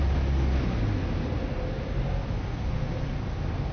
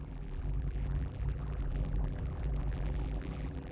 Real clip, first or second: first